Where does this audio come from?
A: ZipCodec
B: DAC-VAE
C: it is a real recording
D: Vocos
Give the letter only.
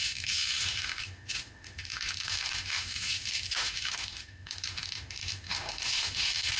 B